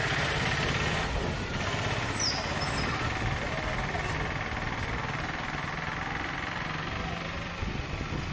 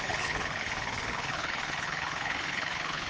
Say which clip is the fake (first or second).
second